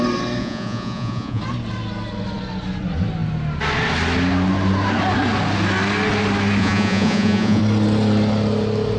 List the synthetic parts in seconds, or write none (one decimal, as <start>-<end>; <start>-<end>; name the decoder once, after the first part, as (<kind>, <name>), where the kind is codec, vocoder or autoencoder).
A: 0.4-1.4 (vocoder, Vocos); 6.6-7.6